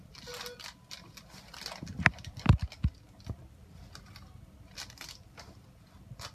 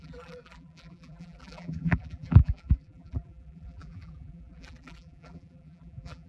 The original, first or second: first